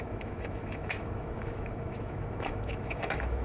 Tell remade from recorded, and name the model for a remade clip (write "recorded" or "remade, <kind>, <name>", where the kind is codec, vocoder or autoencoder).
remade, autoencoder, DAC-VAE